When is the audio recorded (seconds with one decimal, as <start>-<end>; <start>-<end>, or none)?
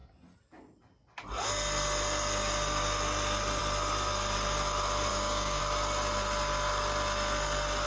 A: 0.0-5.1; 5.6-7.9